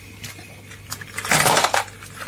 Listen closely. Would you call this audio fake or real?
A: real